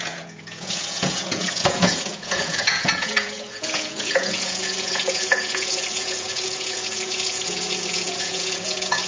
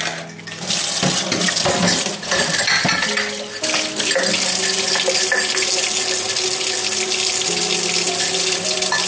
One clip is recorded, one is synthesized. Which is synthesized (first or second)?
first